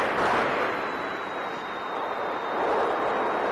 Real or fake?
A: fake